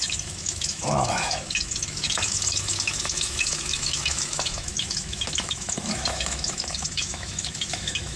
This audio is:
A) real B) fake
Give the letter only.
B